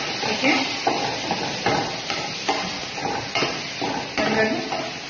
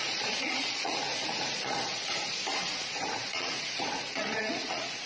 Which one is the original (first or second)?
first